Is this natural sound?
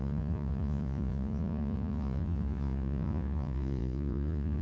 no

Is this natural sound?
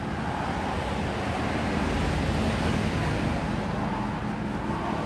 yes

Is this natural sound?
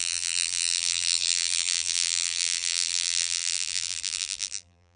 no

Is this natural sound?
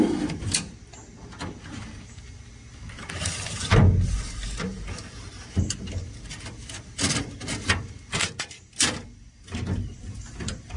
yes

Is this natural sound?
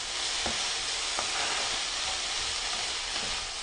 yes